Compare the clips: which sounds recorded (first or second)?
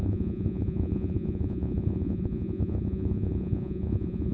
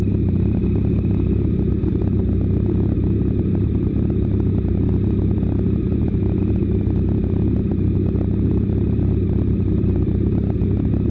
second